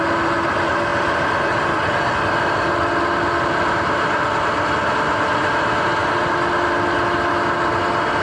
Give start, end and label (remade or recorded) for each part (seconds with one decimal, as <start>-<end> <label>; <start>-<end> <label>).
0.0-8.2 recorded